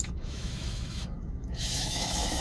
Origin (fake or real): fake